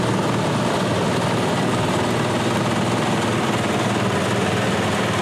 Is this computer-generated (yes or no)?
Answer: no